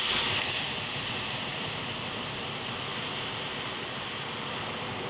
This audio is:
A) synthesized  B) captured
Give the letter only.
B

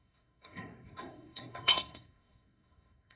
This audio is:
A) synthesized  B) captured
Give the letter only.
A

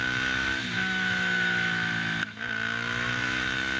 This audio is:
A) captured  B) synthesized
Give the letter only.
B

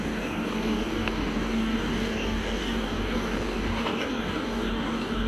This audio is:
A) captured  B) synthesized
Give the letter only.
B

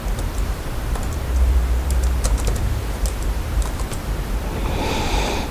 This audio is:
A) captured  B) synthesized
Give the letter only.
B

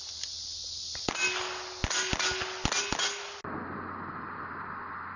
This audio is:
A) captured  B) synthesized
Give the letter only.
A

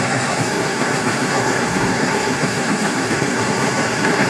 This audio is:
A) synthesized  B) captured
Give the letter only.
A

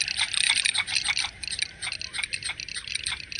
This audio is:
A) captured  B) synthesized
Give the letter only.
A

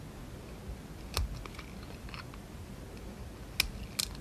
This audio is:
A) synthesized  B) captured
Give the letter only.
B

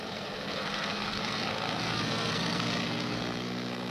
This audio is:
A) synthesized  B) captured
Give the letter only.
A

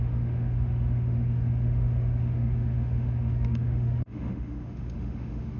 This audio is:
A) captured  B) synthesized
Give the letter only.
B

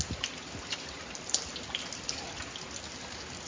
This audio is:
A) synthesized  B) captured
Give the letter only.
B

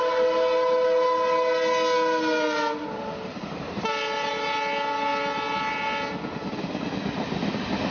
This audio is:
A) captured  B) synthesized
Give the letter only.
A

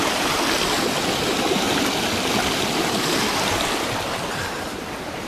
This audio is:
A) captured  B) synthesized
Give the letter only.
A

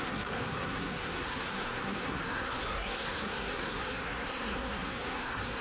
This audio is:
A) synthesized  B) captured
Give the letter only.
A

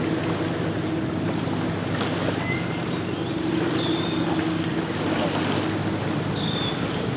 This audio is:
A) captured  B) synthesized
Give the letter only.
A